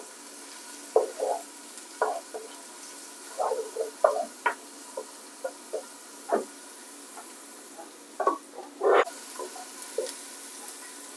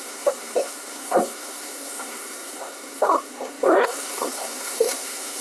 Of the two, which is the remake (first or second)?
second